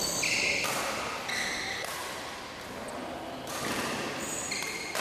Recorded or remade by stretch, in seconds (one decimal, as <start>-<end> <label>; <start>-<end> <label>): 0.0-2.0 recorded; 2.0-5.0 remade